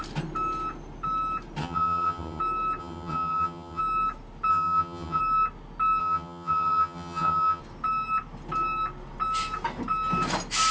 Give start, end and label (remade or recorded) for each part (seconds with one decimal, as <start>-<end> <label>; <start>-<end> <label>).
0.0-1.6 recorded; 1.6-2.4 remade; 2.4-2.8 recorded; 2.8-3.8 remade; 3.8-4.5 recorded; 4.5-5.2 remade; 5.2-6.0 recorded; 6.0-7.6 remade; 7.6-10.7 recorded